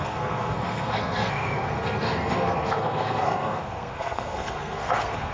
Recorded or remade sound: remade